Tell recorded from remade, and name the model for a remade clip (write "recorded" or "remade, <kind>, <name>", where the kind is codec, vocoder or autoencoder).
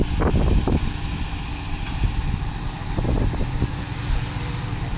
recorded